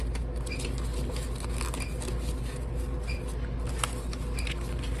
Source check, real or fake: real